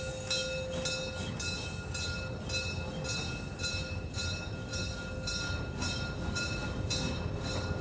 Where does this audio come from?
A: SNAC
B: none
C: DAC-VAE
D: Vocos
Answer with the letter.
B